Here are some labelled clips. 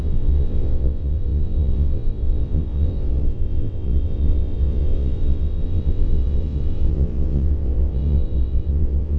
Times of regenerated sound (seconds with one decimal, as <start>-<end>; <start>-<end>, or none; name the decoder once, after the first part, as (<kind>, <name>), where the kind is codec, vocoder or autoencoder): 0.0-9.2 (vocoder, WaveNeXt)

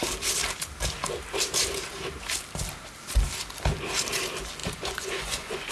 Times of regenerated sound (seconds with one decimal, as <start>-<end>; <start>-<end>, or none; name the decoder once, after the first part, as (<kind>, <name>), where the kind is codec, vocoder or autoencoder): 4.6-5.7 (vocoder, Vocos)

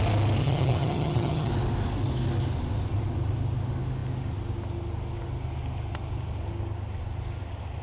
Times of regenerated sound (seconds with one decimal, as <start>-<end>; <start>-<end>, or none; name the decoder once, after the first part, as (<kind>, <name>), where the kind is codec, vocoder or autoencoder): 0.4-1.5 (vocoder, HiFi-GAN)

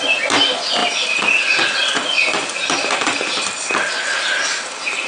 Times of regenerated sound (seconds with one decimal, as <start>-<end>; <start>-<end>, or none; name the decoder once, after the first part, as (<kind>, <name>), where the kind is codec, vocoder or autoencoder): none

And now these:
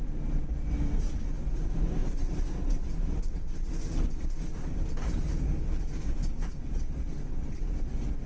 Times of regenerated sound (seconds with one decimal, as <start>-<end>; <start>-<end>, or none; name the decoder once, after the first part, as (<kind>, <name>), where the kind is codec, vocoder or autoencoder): 2.0-4.4 (vocoder, BigVGAN v2)